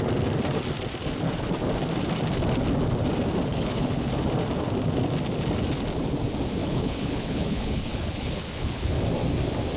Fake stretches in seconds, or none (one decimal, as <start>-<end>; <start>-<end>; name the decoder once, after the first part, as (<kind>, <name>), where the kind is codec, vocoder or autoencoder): 3.5-4.1 (codec, HILCodec); 6.6-9.0